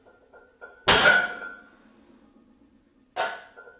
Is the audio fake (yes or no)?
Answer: no